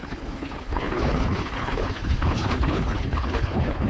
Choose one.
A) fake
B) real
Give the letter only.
A